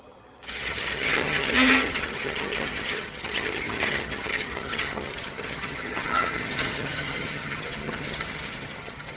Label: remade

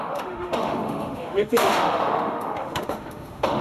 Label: remade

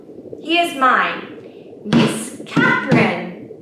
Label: remade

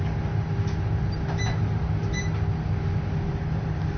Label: recorded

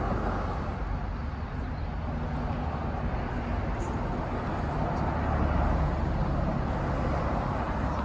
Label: recorded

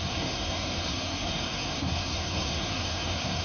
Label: remade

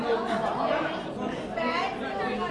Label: recorded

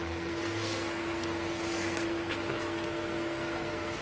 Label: remade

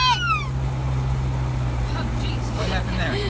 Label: recorded